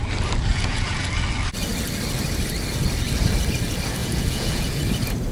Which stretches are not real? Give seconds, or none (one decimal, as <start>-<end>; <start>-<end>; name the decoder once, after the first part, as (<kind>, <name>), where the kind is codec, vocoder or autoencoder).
0.5-1.1 (vocoder, Vocos); 4.0-4.8